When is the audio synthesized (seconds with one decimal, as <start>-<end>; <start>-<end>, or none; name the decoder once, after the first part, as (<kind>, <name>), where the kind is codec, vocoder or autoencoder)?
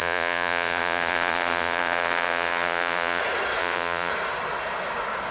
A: 0.0-3.2 (vocoder, Vocos); 3.6-4.1